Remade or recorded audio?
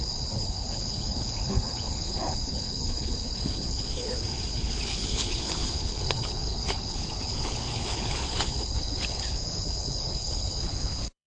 remade